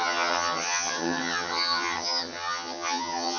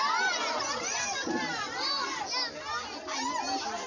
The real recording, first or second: second